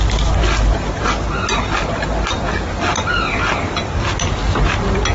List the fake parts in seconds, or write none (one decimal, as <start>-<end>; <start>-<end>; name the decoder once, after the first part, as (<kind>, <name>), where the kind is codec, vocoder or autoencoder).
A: none